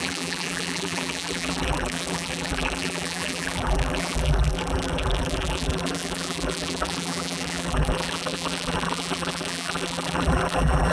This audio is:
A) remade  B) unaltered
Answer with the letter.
A